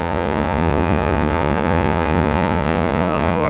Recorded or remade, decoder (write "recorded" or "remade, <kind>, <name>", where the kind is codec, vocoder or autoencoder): remade, vocoder, Vocos